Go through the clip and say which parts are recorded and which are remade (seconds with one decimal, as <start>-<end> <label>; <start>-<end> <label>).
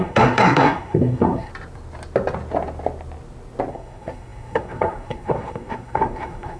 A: 0.0-1.5 remade; 1.5-3.7 recorded; 3.7-6.6 remade